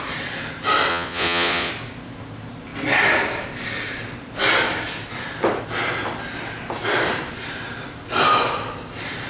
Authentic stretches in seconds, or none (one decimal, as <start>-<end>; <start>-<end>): 0.0-0.9; 1.7-9.3